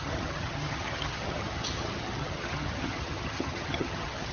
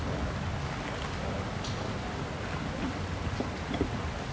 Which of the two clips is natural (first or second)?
second